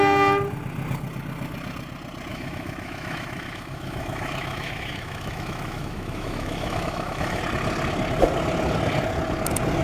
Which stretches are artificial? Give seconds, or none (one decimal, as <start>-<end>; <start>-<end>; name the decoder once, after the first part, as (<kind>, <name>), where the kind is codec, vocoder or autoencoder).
2.3-7.4 (autoencoder, DAC-VAE)